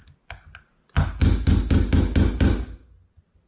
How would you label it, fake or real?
real